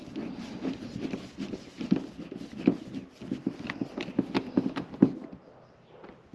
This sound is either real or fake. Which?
real